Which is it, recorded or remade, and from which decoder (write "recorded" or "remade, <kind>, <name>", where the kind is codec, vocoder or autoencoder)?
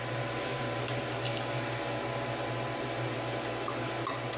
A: recorded